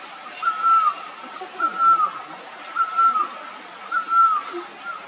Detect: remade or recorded recorded